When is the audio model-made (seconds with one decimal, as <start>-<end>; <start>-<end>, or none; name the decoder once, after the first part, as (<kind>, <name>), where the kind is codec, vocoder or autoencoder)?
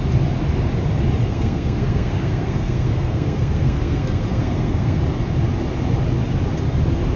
1.2-5.0 (codec, SNAC)